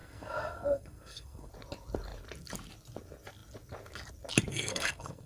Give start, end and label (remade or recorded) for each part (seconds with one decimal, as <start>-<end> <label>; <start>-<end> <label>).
0.0-1.5 remade; 1.5-4.5 recorded; 4.5-5.3 remade